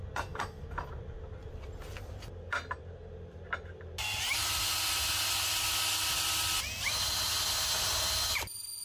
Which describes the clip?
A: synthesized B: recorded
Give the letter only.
B